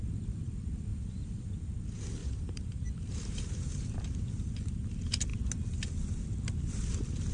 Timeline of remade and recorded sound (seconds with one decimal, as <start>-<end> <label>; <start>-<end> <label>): 0.0-0.9 recorded; 0.9-1.6 remade; 1.6-2.2 recorded; 2.2-4.2 remade; 4.2-7.3 recorded